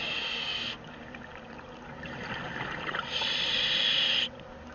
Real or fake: real